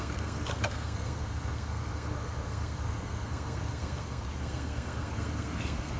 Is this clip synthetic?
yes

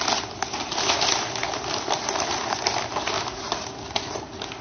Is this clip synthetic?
no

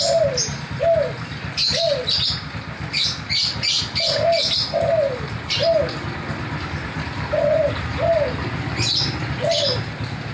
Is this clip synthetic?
no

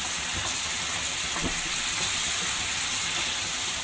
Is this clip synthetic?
no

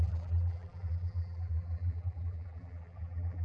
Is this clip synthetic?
yes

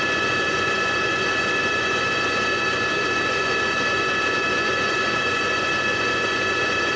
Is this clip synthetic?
yes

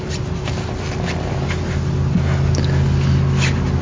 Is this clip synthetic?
no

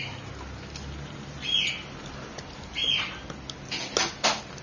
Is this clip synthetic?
no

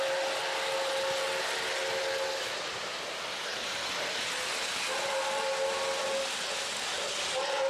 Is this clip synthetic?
no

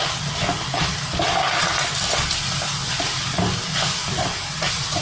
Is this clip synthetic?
no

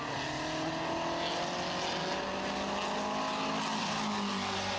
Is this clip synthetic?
no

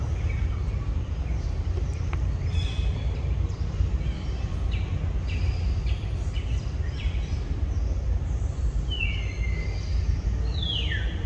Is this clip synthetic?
no